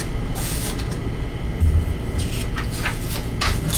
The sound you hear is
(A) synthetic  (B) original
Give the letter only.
B